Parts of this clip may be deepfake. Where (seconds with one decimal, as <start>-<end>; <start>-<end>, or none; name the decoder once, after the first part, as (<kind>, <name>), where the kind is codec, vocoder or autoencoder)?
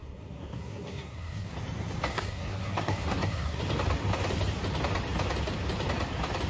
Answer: 0.0-1.5 (codec, SNAC); 2.1-3.6